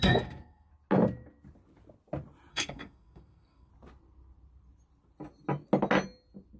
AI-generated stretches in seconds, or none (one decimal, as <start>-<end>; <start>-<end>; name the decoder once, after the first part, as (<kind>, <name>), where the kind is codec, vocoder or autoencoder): 0.0-0.7 (codec, SNAC); 2.5-3.7